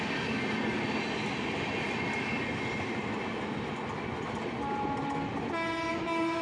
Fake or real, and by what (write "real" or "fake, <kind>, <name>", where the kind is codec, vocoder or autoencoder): real